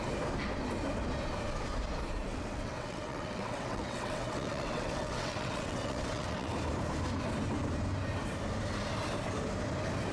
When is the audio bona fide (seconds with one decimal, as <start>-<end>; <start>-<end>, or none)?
0.0-2.3; 6.5-10.1